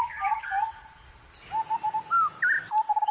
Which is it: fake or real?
fake